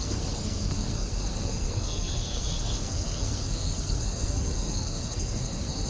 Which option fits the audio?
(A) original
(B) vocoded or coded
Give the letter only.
B